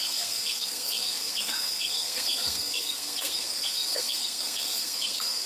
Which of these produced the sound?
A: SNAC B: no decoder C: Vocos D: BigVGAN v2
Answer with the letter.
A